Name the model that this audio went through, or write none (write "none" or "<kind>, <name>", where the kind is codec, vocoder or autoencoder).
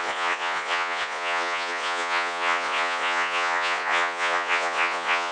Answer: vocoder, Vocos